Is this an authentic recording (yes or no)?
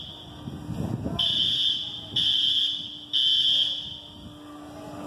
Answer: yes